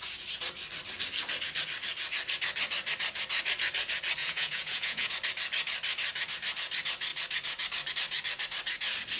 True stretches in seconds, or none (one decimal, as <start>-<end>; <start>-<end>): 0.0-4.2; 5.1-9.2